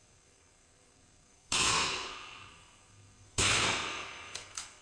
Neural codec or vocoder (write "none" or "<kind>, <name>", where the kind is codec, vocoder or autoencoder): codec, SNAC